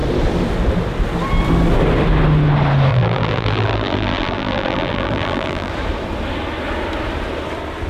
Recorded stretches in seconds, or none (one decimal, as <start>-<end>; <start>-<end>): 0.0-2.9; 5.7-7.9